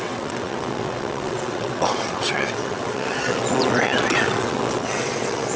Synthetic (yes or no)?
yes